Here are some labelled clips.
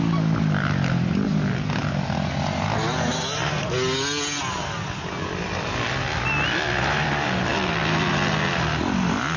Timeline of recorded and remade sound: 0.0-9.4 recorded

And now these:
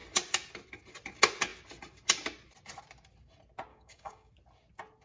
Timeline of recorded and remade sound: 0.0-3.7 recorded; 3.7-4.3 remade; 4.3-5.0 recorded

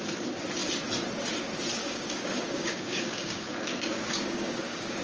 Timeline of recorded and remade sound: 0.0-1.8 recorded; 1.8-5.0 remade